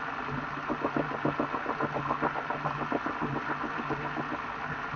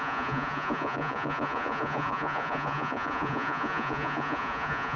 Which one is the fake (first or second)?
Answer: second